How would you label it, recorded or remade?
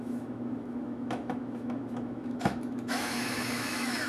remade